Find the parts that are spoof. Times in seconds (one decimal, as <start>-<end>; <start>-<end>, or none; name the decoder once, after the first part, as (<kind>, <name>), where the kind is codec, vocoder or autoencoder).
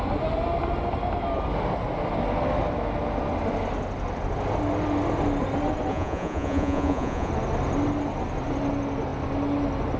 5.9-7.3 (vocoder, Vocos)